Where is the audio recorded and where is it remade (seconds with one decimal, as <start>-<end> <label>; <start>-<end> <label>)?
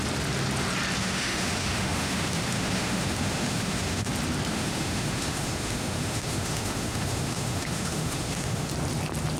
0.0-1.0 recorded; 1.0-4.1 remade; 4.1-4.5 recorded; 4.5-8.7 remade; 8.7-9.4 recorded